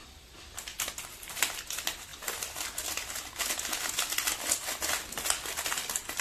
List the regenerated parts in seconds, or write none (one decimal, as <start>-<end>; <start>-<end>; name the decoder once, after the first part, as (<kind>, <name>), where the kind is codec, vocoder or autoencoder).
0.9-2.1 (vocoder, BigVGAN v2); 5.6-6.2